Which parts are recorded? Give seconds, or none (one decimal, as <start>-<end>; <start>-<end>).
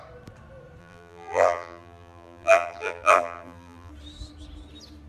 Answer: 0.0-0.8; 3.9-5.1